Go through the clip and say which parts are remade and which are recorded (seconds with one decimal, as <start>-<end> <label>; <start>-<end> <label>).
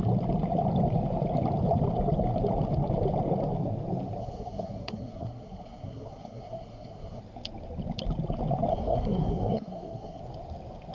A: 0.0-4.2 recorded; 4.2-7.2 remade; 7.2-8.7 recorded; 8.7-10.2 remade; 10.2-10.9 recorded